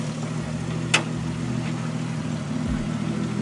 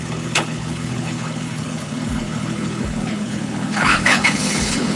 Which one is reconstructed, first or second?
second